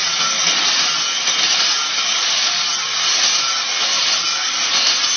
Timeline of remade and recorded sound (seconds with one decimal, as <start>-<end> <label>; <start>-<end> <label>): 0.0-5.2 recorded